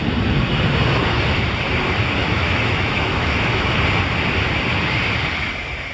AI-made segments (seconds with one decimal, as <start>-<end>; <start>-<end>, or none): 2.2-3.8